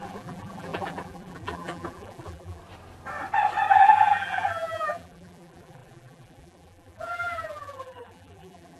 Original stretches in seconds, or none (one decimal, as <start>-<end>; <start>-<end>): 2.6-3.7